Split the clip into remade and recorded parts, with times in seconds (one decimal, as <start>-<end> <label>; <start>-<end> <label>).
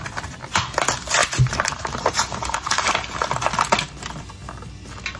0.0-1.2 recorded; 1.2-2.9 remade; 2.9-5.2 recorded